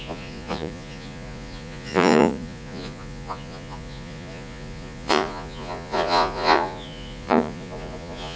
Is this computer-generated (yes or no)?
yes